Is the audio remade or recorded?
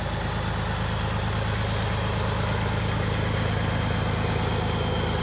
recorded